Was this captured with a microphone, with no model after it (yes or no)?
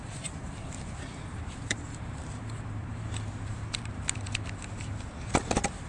no